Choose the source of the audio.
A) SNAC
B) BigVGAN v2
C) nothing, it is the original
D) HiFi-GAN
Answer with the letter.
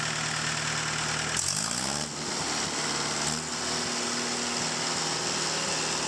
C